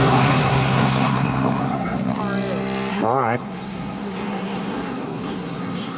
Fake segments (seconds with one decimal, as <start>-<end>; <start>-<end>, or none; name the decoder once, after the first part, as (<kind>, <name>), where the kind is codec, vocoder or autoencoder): 0.0-2.2 (codec, SNAC); 2.9-6.0